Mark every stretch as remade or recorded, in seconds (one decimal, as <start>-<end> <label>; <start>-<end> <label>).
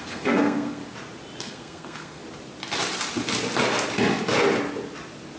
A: 0.0-0.8 remade; 0.8-1.4 recorded; 1.4-2.2 remade; 2.2-5.4 recorded